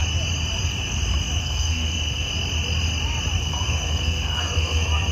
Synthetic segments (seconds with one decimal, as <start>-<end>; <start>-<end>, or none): 1.4-2.3; 3.4-5.1